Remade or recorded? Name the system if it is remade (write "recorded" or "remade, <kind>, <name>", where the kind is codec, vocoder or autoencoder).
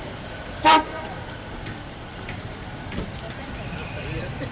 remade, vocoder, BigVGAN v2